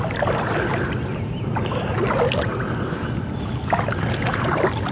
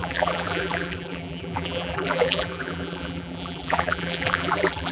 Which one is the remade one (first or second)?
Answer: second